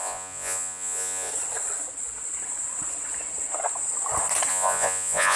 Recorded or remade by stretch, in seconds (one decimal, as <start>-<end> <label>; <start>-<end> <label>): 0.0-1.3 remade; 1.3-4.5 recorded; 4.5-5.4 remade

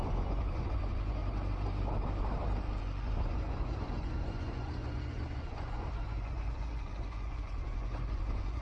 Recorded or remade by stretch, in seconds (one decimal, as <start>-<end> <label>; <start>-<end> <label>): 0.0-1.2 remade; 1.2-2.8 recorded; 2.8-8.6 remade

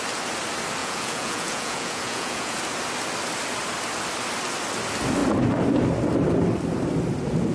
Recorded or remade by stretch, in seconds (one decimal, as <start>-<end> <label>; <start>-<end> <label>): 0.0-0.8 recorded; 0.8-2.6 remade; 2.6-7.5 recorded

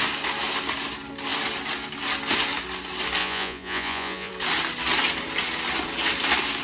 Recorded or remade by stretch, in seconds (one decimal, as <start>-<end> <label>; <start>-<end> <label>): 0.0-3.2 recorded; 3.2-4.3 remade; 4.3-6.6 recorded

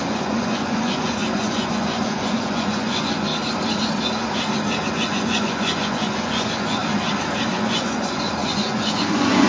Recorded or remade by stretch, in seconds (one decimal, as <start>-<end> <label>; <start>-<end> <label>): 0.0-3.3 remade; 3.3-4.9 recorded; 4.9-6.8 remade; 6.8-7.5 recorded; 7.5-9.5 remade

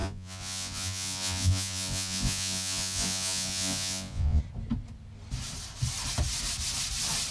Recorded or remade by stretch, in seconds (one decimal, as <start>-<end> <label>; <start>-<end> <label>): 0.0-4.4 remade; 4.4-7.3 recorded

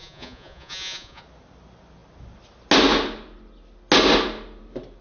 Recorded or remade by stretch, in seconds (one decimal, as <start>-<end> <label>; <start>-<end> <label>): 0.0-1.2 remade; 1.2-5.0 recorded

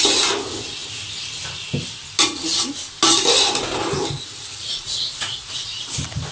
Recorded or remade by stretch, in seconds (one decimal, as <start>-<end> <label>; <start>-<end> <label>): 0.0-4.5 recorded; 4.5-5.7 remade; 5.7-6.3 recorded